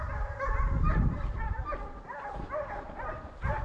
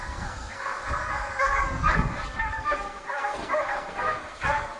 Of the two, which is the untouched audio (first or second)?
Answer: first